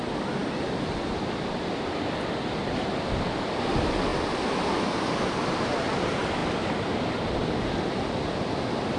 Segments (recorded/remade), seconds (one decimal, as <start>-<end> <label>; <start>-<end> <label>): 0.0-9.0 recorded